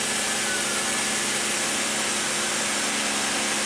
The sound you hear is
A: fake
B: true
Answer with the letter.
B